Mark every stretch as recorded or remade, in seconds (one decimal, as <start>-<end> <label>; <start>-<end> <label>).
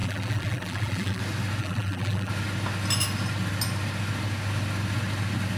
0.0-1.2 remade; 1.2-1.6 recorded; 1.6-2.3 remade; 2.3-5.6 recorded